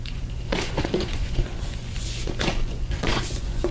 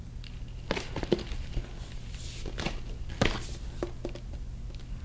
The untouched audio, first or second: second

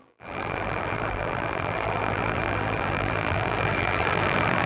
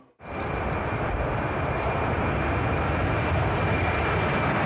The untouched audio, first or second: second